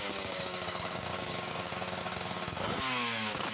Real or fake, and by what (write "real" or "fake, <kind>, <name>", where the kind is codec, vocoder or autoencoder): fake, codec, DAC